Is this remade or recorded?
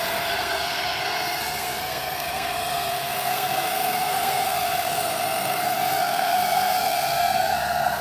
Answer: remade